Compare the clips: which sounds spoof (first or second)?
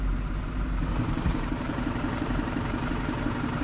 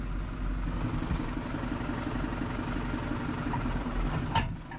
first